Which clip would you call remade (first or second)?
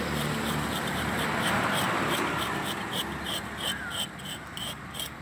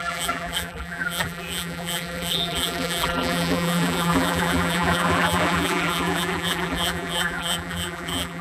second